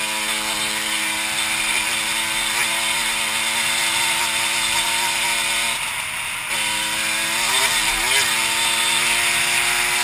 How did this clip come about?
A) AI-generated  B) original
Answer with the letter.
B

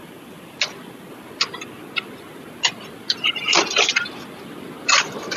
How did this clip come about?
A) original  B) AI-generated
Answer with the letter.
A